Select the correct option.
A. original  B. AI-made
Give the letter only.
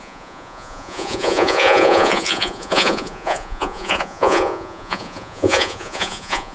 B